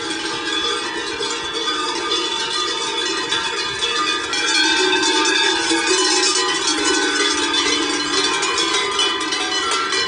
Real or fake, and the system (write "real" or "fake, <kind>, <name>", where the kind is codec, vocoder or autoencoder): real